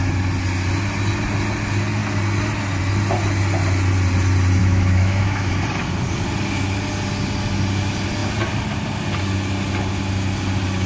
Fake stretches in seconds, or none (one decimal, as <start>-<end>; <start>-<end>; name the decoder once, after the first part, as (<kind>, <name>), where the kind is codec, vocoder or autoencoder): 4.6-5.5 (autoencoder, DAC-VAE)